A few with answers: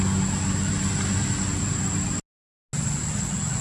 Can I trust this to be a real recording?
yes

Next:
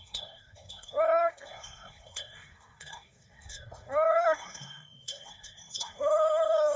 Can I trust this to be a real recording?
no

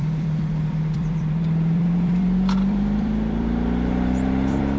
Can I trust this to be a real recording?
no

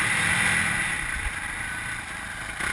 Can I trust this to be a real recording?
yes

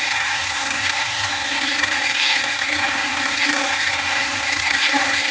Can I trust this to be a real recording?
no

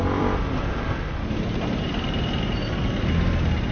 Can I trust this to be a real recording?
yes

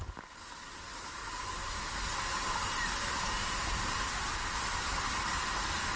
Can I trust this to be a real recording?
yes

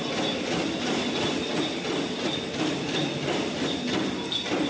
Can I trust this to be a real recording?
yes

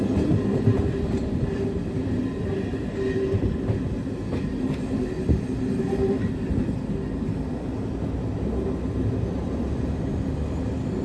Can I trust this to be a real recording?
yes